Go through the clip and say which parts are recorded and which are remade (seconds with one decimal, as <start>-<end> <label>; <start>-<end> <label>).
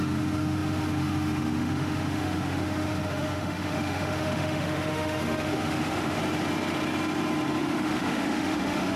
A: 0.0-6.2 remade; 6.2-7.6 recorded; 7.6-9.0 remade